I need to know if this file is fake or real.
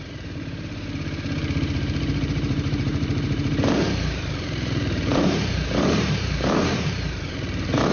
fake